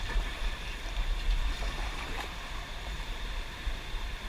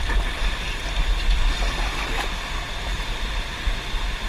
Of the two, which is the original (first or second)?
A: second